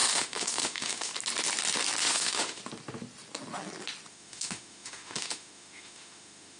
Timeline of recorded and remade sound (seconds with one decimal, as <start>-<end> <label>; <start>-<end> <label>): 0.0-1.1 remade; 1.1-2.0 recorded; 2.0-2.6 remade; 2.6-4.1 recorded; 4.1-6.6 remade